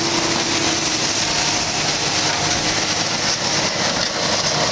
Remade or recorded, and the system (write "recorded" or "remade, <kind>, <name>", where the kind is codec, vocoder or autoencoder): recorded